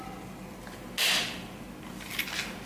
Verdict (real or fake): real